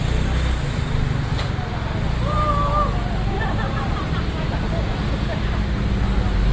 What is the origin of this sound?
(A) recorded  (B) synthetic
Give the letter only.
A